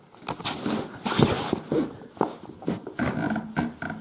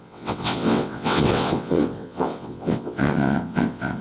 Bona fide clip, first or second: first